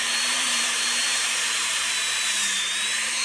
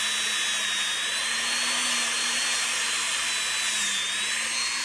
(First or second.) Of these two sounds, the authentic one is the second